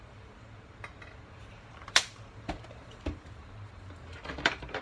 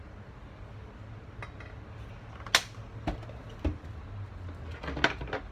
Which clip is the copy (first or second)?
first